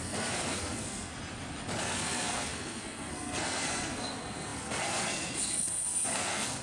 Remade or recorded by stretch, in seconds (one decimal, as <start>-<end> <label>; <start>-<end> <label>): 0.0-1.1 remade; 1.1-1.8 recorded; 1.8-6.6 remade